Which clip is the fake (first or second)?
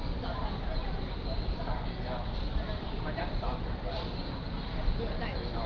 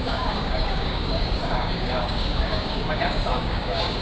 second